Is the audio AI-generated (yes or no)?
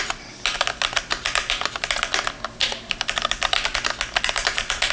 no